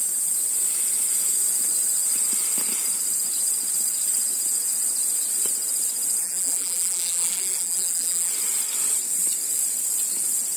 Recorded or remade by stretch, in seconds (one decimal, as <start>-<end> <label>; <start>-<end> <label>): 0.0-6.2 recorded; 6.2-8.3 remade; 8.3-10.6 recorded